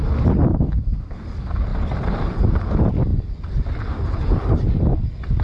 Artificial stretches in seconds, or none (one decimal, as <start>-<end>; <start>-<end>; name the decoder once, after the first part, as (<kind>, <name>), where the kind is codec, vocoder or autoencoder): 0.5-1.2 (codec, SNAC)